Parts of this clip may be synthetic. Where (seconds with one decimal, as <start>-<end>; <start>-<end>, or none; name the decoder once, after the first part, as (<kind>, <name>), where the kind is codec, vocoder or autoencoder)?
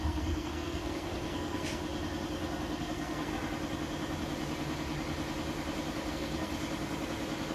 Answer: 0.0-1.8 (codec, SNAC); 2.8-3.3; 6.1-6.5